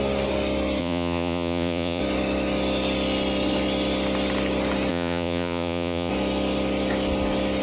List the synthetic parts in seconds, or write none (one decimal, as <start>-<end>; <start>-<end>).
0.8-2.0; 4.9-6.1